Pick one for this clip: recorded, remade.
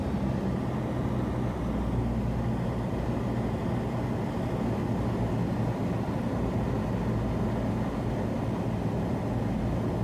recorded